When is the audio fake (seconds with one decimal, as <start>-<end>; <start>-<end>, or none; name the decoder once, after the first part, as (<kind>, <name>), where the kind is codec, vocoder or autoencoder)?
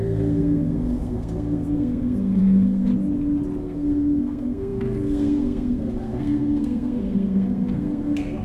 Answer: 0.0-2.9 (codec, SNAC); 3.6-8.4